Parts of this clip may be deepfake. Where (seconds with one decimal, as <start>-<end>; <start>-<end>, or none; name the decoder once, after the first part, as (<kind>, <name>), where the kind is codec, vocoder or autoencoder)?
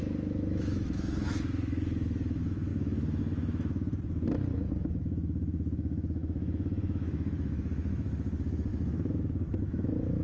0.0-3.9 (autoencoder, DAC-VAE); 4.7-10.2